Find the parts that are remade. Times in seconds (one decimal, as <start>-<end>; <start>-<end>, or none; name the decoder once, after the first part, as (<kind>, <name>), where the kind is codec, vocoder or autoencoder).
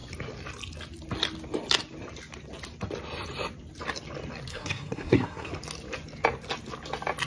4.5-5.5 (codec, SNAC)